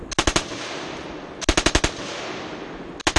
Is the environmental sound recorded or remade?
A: recorded